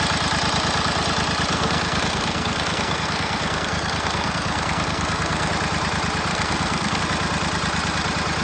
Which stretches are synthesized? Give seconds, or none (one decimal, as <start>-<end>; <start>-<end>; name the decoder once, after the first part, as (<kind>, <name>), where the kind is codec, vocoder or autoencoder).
1.5-5.5 (codec, SNAC); 6.3-7.0